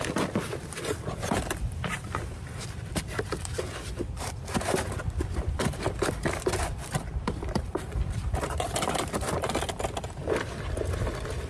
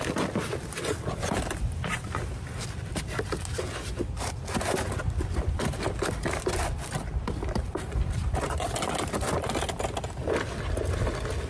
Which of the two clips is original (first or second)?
second